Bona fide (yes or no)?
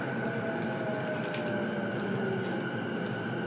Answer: yes